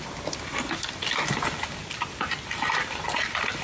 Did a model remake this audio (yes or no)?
no